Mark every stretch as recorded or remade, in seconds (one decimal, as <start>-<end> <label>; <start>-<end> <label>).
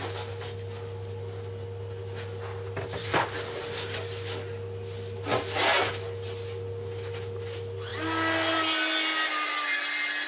0.0-10.3 recorded